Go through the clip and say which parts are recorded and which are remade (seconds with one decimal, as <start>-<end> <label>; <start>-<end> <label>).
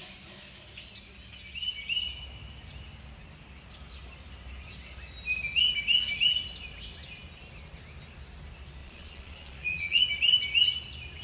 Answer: 0.0-8.8 recorded; 8.8-10.0 remade; 10.0-11.2 recorded